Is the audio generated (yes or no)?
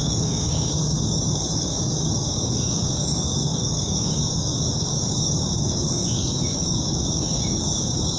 yes